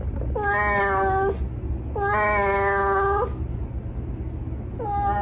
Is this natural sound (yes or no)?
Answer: yes